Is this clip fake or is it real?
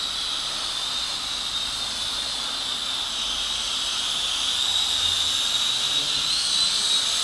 real